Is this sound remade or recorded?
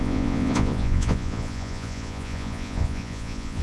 remade